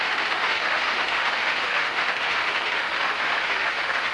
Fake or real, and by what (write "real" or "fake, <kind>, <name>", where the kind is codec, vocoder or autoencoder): fake, autoencoder, DAC-VAE